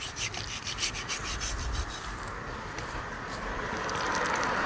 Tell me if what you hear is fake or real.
fake